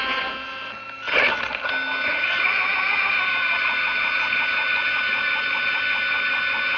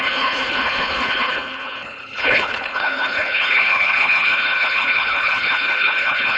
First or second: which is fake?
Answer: second